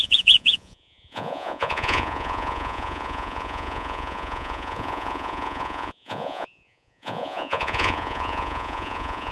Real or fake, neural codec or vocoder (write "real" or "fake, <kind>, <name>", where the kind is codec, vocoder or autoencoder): fake, vocoder, Vocos